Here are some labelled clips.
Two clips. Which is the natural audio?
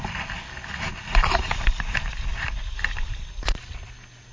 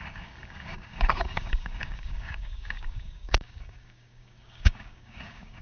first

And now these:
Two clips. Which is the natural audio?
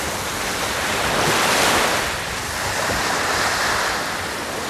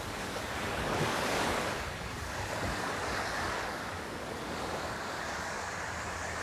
first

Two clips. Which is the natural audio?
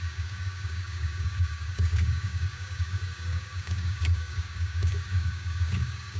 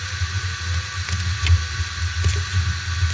second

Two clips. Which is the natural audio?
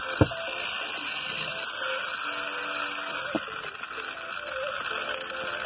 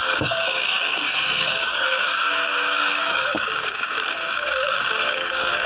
first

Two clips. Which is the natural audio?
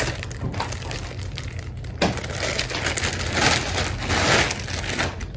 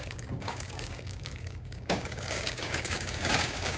first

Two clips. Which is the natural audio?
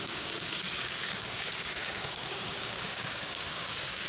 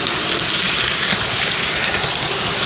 second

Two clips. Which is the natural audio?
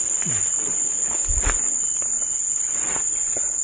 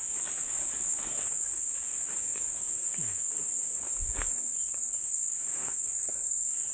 first